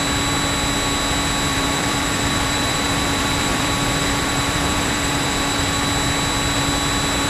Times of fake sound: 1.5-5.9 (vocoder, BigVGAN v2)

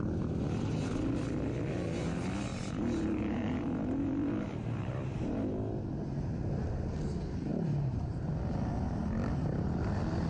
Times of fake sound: 2.5-5.7 (vocoder, BigVGAN v2); 7.5-8.1

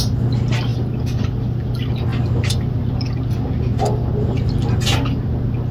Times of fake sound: none

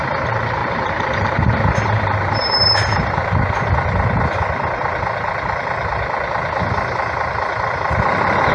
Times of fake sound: 0.6-3.5 (vocoder, BigVGAN v2)

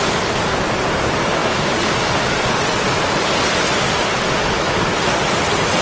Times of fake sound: none

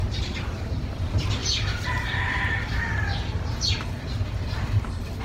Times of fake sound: 0.0-0.7 (vocoder, BigVGAN v2); 1.4-3.4

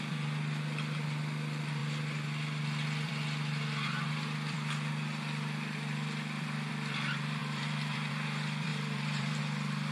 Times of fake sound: 7.4-8.1 (vocoder, BigVGAN v2); 8.7-9.4